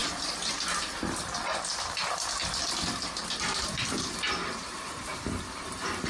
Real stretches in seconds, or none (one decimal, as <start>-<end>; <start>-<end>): 0.0-4.4; 5.3-6.1